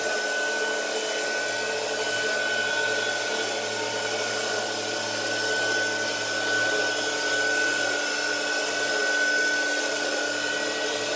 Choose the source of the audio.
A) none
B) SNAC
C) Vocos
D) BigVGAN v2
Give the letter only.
A